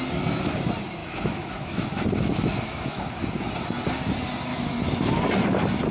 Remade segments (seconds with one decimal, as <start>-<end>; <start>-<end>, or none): 1.0-3.5; 4.5-5.2